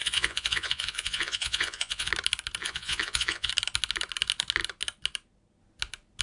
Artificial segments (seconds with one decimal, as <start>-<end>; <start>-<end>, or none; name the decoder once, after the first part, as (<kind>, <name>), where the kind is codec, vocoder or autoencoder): 0.0-2.1 (vocoder, Vocos); 2.6-3.5